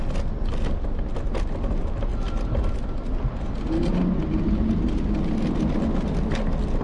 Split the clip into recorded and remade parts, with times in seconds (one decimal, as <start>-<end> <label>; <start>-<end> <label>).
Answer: 0.0-6.8 recorded